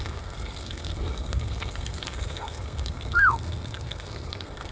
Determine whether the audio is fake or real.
fake